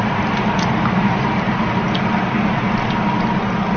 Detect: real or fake real